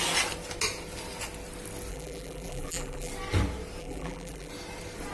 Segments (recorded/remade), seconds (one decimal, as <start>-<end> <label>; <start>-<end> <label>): 0.0-1.9 recorded; 1.9-3.1 remade; 3.1-3.8 recorded; 3.8-4.5 remade; 4.5-5.1 recorded